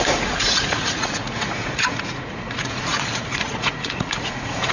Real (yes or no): no